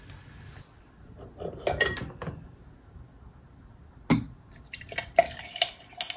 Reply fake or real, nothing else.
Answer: real